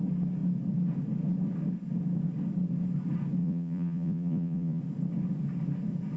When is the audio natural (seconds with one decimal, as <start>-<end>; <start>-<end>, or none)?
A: 0.0-3.4; 4.8-6.2